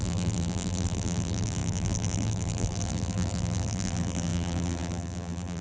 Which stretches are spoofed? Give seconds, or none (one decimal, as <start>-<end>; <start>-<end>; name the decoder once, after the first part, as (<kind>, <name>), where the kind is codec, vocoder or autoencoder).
0.0-5.6 (vocoder, BigVGAN v2)